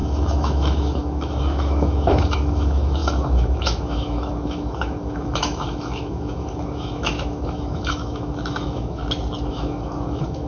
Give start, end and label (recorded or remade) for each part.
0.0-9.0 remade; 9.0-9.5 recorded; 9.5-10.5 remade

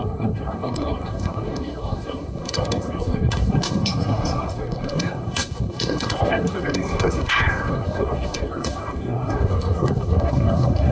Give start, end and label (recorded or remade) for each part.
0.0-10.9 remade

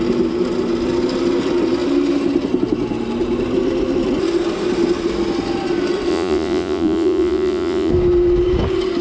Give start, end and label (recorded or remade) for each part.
0.0-6.1 recorded; 6.1-7.9 remade; 7.9-9.0 recorded

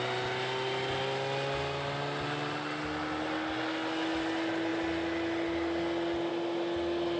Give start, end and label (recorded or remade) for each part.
0.0-7.2 recorded

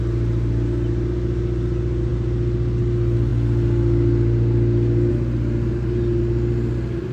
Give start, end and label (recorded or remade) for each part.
0.0-7.1 recorded

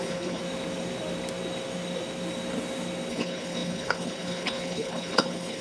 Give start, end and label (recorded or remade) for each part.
0.0-0.4 remade; 0.4-3.1 recorded; 3.1-5.6 remade

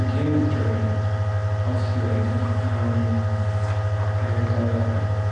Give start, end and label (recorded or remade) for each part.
0.0-5.3 recorded

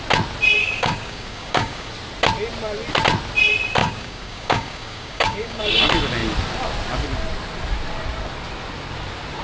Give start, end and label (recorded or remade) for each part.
0.0-0.6 recorded; 0.6-1.9 remade; 1.9-3.8 recorded; 3.8-5.6 remade; 5.6-9.4 recorded